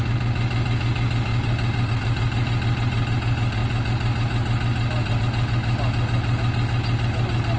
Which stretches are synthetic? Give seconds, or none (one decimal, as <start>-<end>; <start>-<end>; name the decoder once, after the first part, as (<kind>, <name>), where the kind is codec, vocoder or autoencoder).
none